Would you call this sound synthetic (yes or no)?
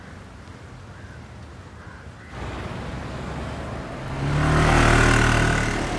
no